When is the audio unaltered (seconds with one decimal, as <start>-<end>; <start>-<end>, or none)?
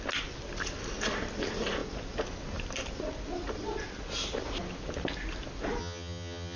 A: 0.0-5.8